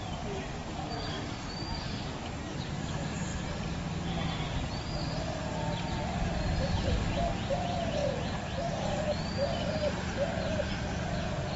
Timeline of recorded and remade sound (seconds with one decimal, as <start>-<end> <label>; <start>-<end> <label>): 0.0-0.6 remade; 0.6-1.6 recorded; 1.6-3.3 remade; 3.3-6.1 recorded; 6.1-11.6 remade